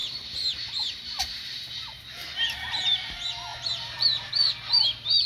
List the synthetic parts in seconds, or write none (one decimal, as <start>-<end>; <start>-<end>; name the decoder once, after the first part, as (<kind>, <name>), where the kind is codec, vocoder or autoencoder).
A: 0.0-1.7 (vocoder, BigVGAN v2); 3.5-4.3